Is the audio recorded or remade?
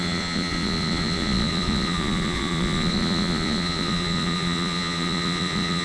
remade